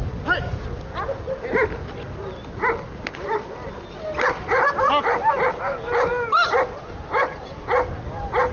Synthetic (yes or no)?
no